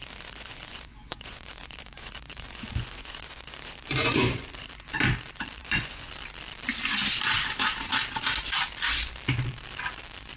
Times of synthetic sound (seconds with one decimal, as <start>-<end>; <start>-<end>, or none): 0.0-4.7; 5.6-6.1